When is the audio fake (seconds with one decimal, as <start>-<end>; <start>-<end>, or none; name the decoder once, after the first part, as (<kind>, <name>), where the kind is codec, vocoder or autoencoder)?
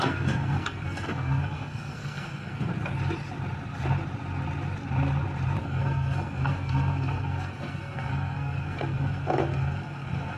0.0-2.7 (codec, SNAC); 5.6-10.4